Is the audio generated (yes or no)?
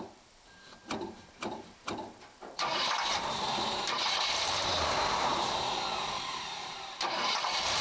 yes